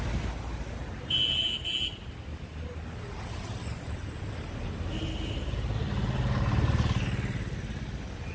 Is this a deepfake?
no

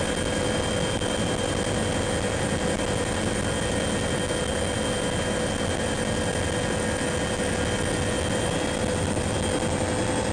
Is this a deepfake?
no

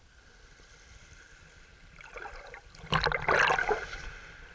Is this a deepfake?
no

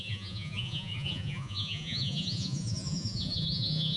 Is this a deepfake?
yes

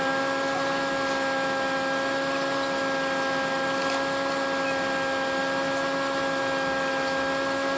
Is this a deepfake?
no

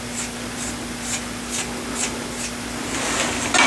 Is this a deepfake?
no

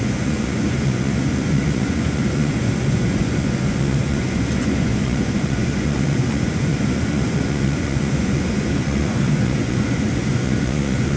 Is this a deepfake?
yes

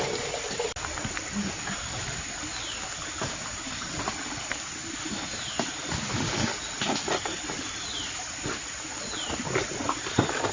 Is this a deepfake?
no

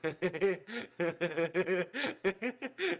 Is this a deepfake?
yes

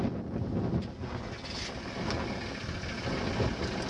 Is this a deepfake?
no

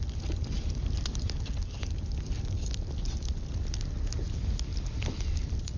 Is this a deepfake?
no